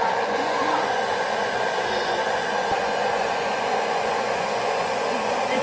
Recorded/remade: remade